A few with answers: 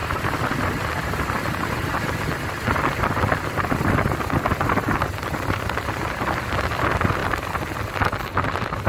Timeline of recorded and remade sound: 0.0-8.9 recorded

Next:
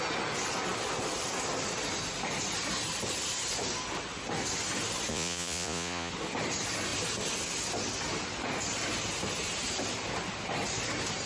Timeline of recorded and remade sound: 0.0-5.1 recorded; 5.1-6.1 remade; 6.1-11.3 recorded

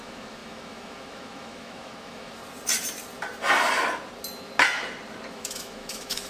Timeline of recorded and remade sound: 0.0-2.4 remade; 2.4-5.3 recorded; 5.3-6.3 remade

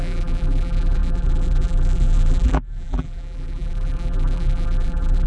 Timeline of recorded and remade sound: 0.0-5.3 remade